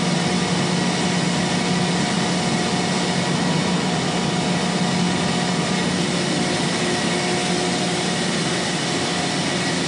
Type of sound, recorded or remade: recorded